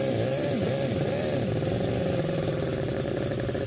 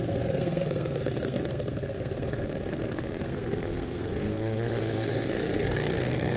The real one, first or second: first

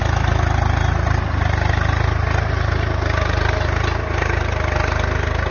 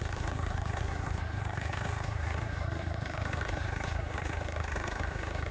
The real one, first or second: first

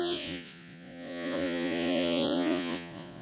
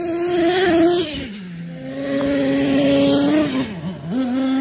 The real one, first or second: second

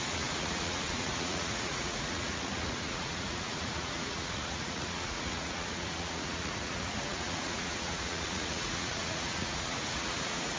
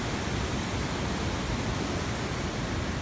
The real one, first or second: second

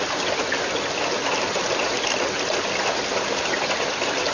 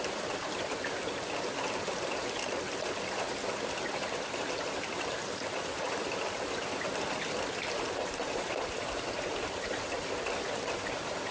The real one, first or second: first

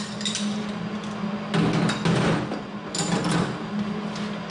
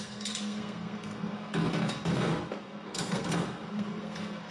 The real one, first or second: first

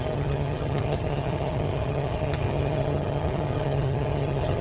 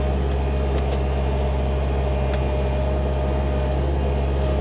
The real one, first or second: second